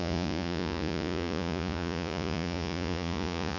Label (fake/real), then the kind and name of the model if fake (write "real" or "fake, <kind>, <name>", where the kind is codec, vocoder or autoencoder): fake, vocoder, Vocos